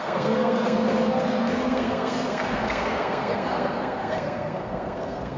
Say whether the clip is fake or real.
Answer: fake